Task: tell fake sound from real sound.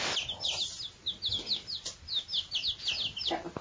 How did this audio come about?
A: real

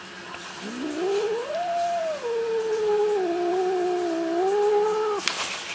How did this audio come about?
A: real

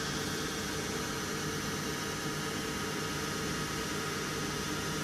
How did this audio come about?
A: real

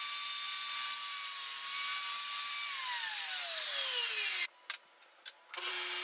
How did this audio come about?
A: real